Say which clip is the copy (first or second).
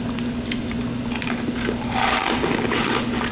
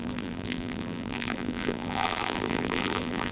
second